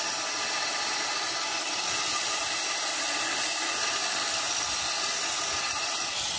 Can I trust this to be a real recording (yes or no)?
no